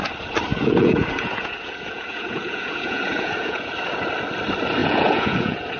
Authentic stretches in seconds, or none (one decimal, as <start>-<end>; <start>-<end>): 0.0-0.5; 3.7-4.8

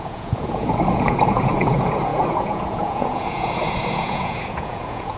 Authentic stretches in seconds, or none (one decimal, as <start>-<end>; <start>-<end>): none

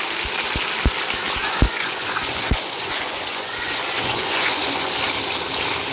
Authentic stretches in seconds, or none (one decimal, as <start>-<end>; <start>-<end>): 0.0-1.4; 4.9-5.9

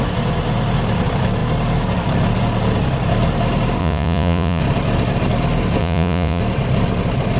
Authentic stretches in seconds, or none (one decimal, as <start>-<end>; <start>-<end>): 0.0-3.8; 4.6-5.8; 6.4-7.4

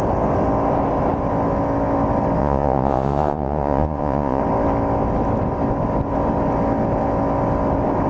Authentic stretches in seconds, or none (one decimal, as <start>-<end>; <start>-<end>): 0.0-2.4; 4.4-8.1

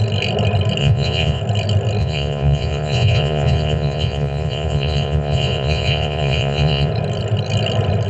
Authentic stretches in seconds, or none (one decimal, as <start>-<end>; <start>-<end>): 0.0-0.8; 1.4-2.0; 6.9-8.1